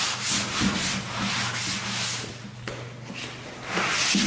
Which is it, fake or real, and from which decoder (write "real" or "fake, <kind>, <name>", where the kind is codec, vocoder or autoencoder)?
real